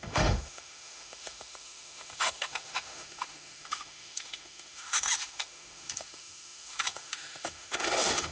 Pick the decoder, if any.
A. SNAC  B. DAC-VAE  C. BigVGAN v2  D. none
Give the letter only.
B